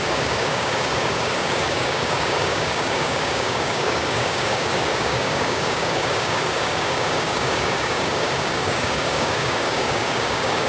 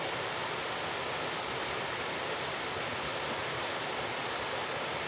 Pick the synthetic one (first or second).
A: first